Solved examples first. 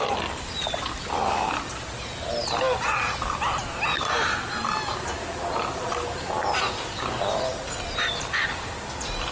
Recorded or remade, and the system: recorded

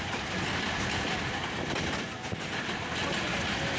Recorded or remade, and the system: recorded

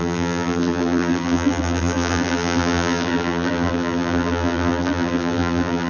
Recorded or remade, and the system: remade, vocoder, BigVGAN v2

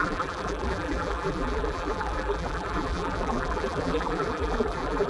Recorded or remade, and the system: remade, vocoder, BigVGAN v2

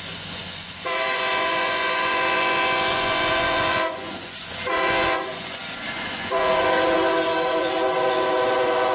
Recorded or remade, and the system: remade, vocoder, Vocos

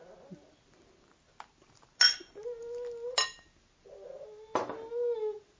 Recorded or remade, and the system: recorded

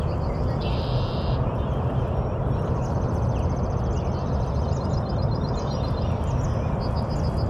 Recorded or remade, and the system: recorded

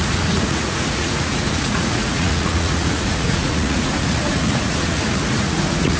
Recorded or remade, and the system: remade, vocoder, Vocos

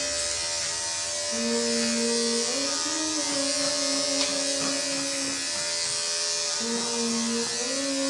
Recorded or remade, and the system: recorded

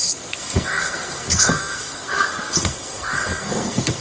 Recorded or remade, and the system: remade, codec, SNAC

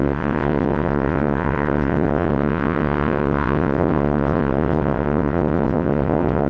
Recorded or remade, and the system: remade, vocoder, WaveNeXt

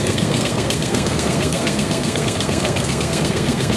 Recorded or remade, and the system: remade, codec, SNAC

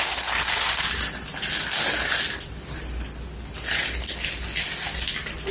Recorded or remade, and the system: recorded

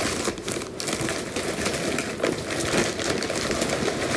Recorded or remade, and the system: recorded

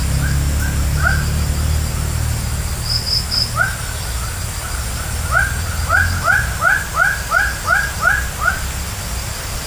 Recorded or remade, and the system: recorded